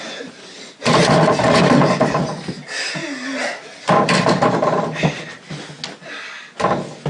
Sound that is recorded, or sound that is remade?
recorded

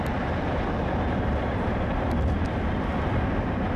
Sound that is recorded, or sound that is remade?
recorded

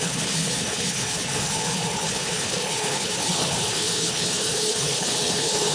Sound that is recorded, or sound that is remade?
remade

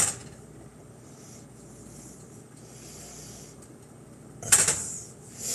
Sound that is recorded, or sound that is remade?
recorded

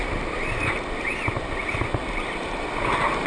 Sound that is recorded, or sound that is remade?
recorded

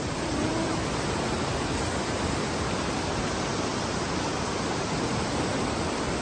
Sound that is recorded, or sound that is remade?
recorded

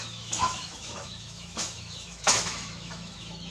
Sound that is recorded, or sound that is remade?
remade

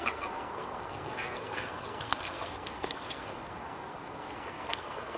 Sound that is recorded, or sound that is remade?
remade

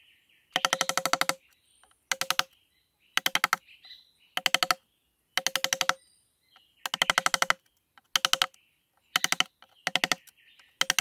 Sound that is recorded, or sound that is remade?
recorded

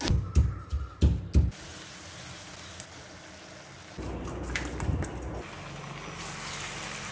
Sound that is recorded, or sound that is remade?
recorded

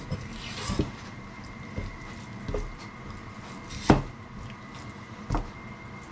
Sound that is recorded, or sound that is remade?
recorded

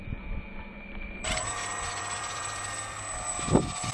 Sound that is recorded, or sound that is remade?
remade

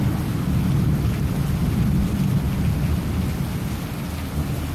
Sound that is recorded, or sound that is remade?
recorded